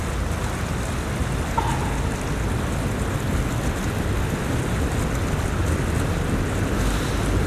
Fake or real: real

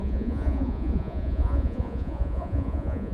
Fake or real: fake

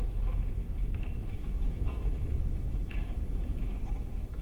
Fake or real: fake